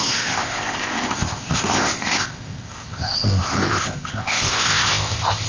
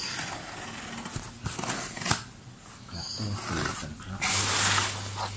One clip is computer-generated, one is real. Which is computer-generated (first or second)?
first